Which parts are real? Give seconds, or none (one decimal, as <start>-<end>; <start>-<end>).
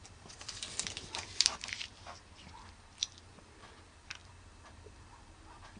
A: 1.6-4.2; 5.2-5.8